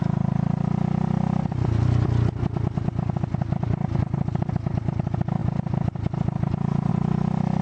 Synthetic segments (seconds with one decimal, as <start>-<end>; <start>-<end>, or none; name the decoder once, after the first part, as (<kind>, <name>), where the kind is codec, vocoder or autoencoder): none